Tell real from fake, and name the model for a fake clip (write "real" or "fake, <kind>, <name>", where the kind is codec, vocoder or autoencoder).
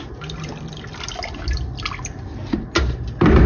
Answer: real